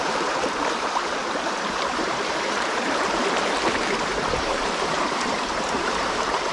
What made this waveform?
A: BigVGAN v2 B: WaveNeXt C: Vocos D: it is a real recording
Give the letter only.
A